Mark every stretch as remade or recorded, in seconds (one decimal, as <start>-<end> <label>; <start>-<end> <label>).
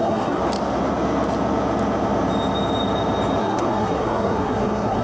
0.0-0.4 remade; 0.4-3.4 recorded; 3.4-5.0 remade